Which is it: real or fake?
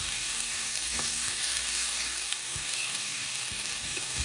fake